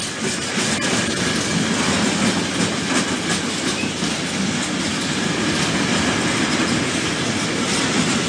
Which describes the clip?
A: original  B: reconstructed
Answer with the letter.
A